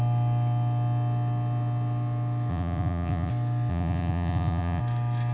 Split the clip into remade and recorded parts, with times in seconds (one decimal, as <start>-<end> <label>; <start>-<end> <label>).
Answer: 0.0-2.5 recorded; 2.5-3.3 remade; 3.3-3.7 recorded; 3.7-4.8 remade; 4.8-5.3 recorded